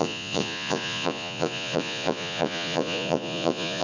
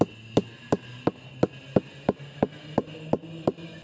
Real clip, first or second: second